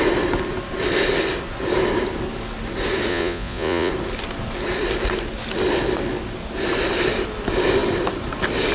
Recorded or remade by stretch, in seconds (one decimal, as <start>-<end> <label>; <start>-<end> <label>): 0.0-3.1 recorded; 3.1-3.9 remade; 3.9-8.7 recorded